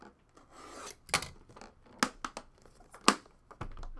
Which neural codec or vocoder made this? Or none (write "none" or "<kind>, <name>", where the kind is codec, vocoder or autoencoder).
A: none